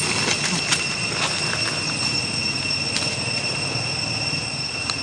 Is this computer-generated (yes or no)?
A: no